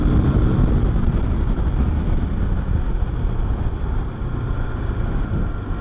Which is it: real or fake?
real